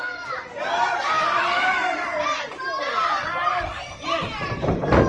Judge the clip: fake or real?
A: fake